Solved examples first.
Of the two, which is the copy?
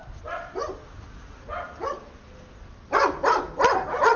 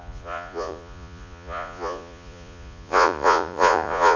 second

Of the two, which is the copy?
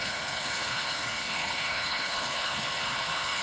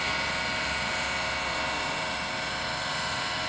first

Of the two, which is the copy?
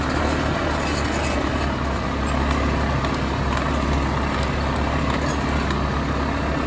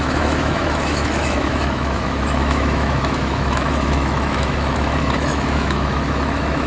second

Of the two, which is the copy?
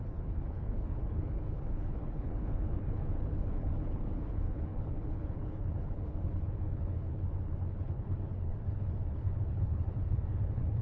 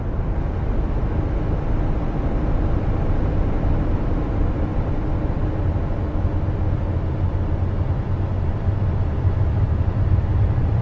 first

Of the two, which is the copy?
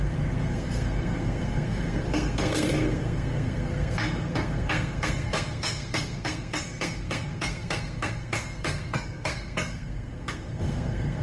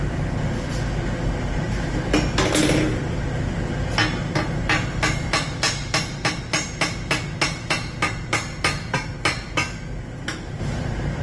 first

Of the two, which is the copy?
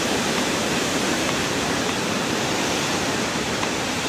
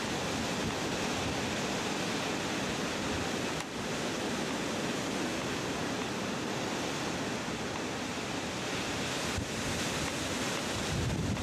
first